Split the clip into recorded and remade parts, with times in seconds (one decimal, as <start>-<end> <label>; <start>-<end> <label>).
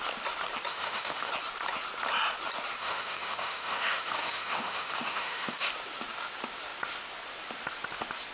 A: 0.0-0.7 recorded; 0.7-1.3 remade; 1.3-2.8 recorded; 2.8-5.7 remade; 5.7-8.3 recorded